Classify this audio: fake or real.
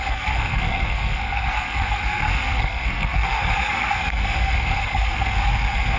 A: fake